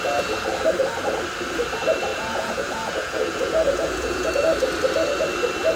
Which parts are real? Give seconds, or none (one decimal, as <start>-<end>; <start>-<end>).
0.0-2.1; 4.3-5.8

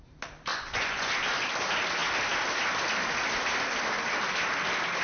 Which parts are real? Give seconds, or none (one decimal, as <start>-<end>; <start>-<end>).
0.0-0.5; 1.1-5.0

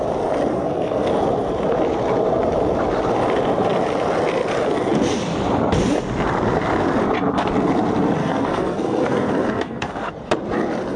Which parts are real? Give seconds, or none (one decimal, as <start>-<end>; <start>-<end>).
0.0-0.5; 1.1-8.2; 10.1-11.0

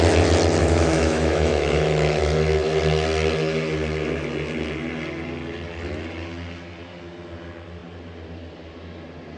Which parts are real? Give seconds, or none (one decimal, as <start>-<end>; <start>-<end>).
0.0-0.6; 2.2-9.4